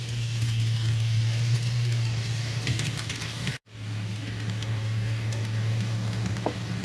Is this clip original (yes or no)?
no